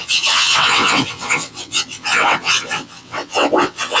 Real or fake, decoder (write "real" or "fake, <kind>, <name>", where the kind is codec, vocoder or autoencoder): fake, vocoder, WaveNeXt